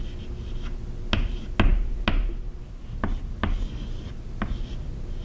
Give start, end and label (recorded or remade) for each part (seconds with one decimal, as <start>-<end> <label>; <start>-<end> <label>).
0.0-5.2 recorded